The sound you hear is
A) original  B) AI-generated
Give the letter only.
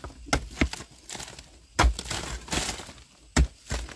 A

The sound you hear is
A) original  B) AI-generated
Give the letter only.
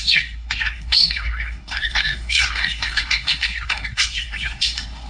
B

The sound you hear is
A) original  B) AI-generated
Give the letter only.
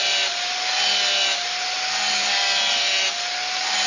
A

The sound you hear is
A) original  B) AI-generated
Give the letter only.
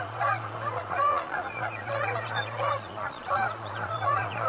B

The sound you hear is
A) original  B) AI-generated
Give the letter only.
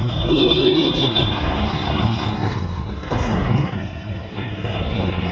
B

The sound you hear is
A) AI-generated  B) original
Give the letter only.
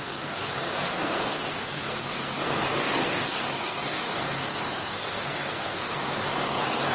A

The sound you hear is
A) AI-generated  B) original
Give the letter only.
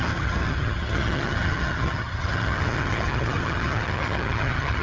A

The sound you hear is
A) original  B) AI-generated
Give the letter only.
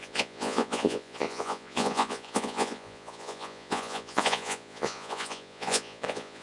B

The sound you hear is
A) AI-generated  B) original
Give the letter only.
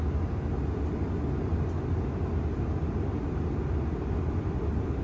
B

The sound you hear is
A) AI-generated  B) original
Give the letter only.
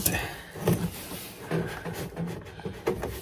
B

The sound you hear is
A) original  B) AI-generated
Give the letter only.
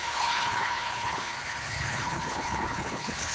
B